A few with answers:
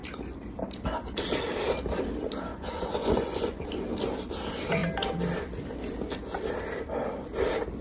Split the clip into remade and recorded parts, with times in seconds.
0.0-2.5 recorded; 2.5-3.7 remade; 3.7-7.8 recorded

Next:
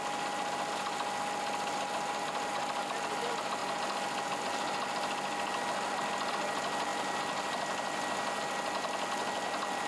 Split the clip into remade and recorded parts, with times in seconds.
0.0-9.9 recorded